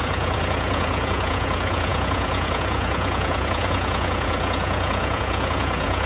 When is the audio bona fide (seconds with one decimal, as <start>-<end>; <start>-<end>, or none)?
none